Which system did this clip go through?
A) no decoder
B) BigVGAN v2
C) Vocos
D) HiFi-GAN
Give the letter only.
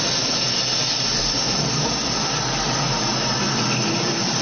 A